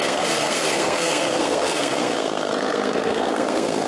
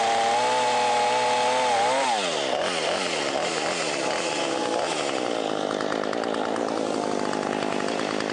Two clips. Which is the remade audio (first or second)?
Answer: first